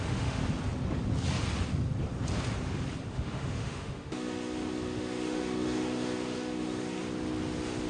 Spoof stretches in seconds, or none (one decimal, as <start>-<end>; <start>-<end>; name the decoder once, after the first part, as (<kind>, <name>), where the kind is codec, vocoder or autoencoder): 0.0-0.4 (autoencoder, DAC-VAE); 3.1-7.0